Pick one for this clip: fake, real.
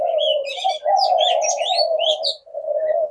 real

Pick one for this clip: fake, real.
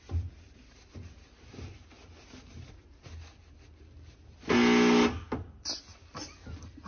real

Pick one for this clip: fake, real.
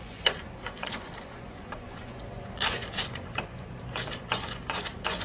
fake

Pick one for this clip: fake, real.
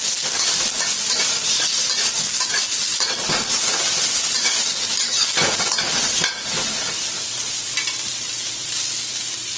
real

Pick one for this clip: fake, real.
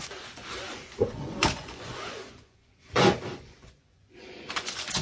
fake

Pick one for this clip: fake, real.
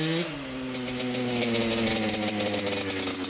real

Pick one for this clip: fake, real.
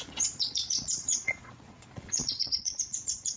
fake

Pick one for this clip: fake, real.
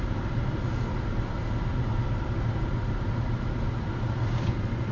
real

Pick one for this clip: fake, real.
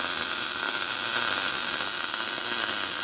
real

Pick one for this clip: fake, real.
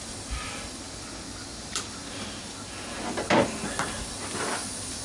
real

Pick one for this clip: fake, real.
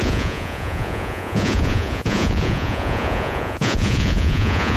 fake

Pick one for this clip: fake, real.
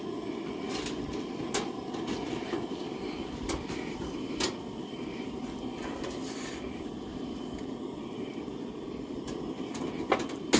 real